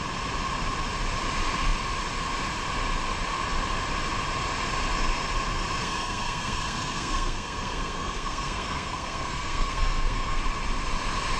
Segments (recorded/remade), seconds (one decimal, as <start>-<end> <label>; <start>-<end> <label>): 0.0-5.8 recorded; 5.8-10.4 remade; 10.4-11.4 recorded